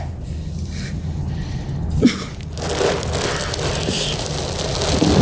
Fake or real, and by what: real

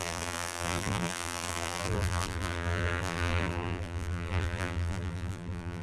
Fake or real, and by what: fake, vocoder, BigVGAN v2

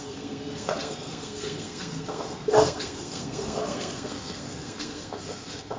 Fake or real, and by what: fake, codec, SNAC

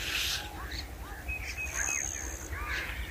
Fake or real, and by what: real